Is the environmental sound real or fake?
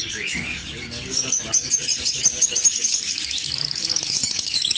fake